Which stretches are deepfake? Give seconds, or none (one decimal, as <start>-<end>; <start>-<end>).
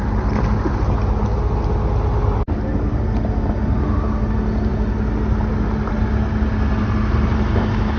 none